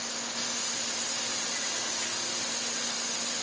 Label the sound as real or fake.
real